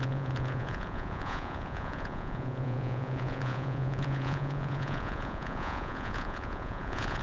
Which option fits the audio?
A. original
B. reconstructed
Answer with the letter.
B